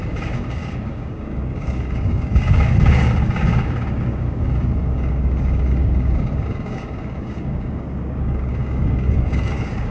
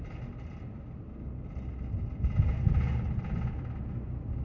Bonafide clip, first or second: second